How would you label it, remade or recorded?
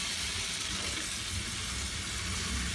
recorded